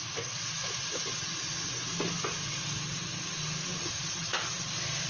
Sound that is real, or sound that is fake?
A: real